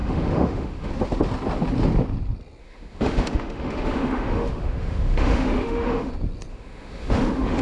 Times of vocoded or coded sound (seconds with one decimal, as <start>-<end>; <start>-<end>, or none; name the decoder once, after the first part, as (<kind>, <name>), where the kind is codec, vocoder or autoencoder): 0.0-0.9 (autoencoder, DAC-VAE); 2.6-6.1; 6.5-7.6